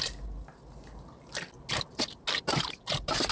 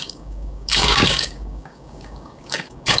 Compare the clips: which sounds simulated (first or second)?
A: second